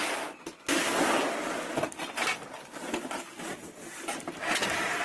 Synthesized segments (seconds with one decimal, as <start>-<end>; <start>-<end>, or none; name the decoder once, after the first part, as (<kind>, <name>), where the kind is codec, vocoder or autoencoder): 3.0-5.0 (vocoder, BigVGAN v2)